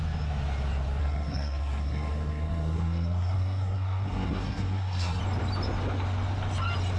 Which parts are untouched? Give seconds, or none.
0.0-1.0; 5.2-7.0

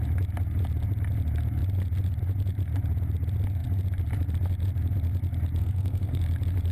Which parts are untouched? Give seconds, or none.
0.0-5.6; 6.2-6.7